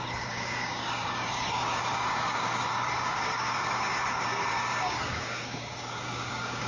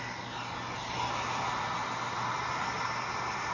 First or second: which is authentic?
second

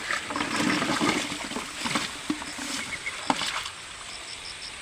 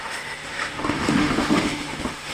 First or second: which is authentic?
first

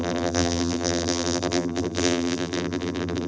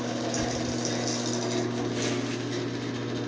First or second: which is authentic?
second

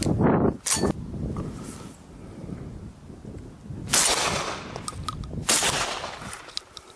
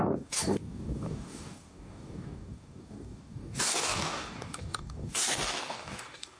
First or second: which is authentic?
first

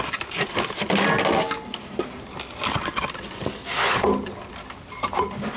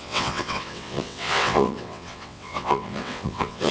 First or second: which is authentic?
first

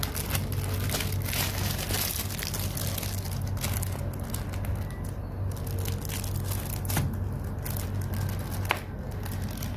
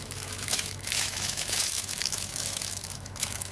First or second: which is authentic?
first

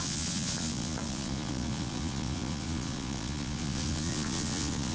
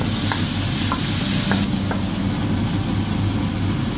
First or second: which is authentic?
second